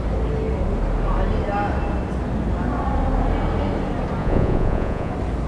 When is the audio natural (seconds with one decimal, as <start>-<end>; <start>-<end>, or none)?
0.0-4.2; 5.1-5.5